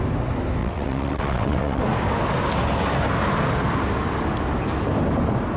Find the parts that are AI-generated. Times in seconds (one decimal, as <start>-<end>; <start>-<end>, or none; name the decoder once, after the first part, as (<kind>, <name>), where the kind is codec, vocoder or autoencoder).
0.6-1.8 (vocoder, WaveNeXt)